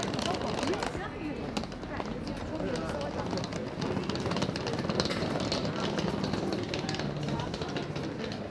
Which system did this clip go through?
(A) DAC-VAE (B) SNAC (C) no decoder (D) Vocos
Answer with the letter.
C